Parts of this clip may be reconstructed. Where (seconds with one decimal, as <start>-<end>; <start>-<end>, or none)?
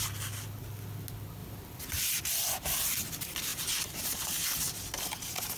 3.5-4.8